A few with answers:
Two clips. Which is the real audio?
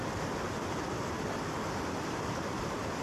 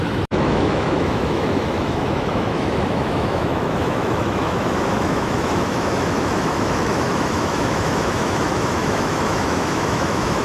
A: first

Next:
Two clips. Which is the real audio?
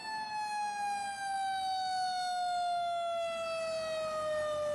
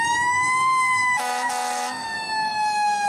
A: first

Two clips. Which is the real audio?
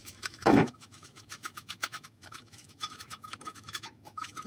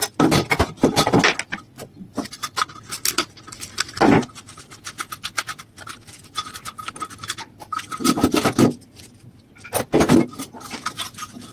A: second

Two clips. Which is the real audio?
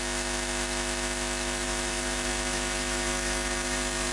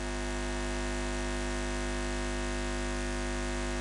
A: second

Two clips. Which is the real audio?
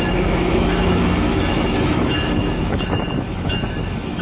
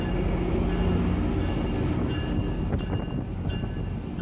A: second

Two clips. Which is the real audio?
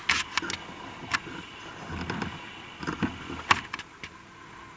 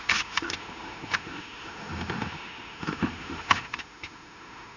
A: first